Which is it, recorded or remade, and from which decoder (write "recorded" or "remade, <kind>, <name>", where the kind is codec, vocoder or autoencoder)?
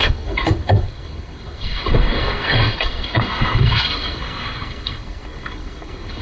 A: remade, codec, SNAC